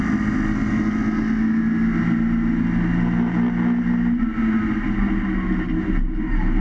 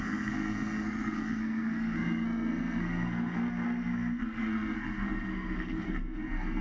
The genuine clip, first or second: first